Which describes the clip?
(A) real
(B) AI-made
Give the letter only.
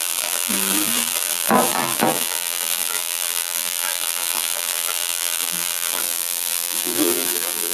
B